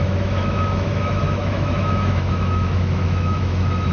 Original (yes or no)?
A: no